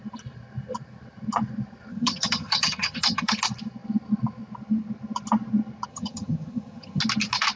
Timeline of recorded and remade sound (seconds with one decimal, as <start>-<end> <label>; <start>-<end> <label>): 0.0-1.9 recorded; 1.9-3.4 remade; 3.4-5.9 recorded; 5.9-7.0 remade; 7.0-7.6 recorded